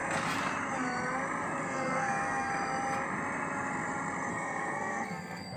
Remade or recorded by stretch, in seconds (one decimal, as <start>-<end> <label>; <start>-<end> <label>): 0.0-1.6 recorded; 1.6-2.5 remade; 2.5-4.3 recorded; 4.3-5.6 remade